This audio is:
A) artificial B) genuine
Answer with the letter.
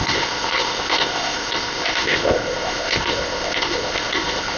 A